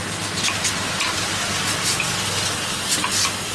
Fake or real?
real